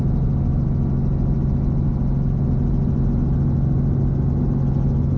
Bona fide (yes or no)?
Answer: yes